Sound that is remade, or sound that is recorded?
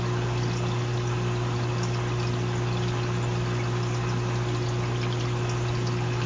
recorded